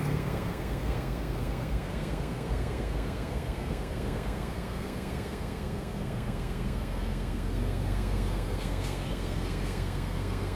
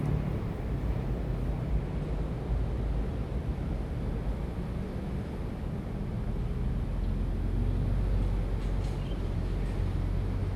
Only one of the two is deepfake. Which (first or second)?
first